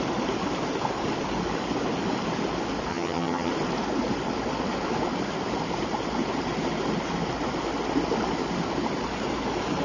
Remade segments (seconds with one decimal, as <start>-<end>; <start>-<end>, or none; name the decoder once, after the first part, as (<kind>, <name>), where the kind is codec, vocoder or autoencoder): 2.9-3.5 (vocoder, HiFi-GAN)